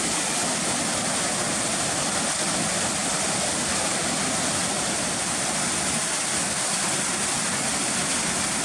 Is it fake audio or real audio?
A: real